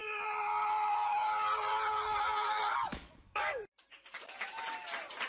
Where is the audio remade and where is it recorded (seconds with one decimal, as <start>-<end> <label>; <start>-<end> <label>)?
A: 0.0-2.9 recorded; 2.9-3.6 remade; 3.6-5.3 recorded